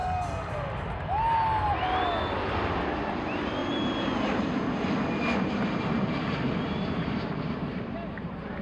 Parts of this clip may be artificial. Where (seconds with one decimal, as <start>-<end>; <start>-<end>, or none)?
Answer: 3.1-3.6; 5.4-8.6